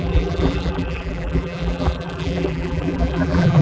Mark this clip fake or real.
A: fake